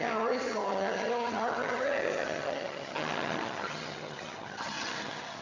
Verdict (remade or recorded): remade